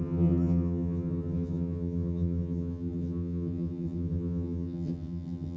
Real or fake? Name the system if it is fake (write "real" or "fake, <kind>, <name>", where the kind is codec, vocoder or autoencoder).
fake, vocoder, HiFi-GAN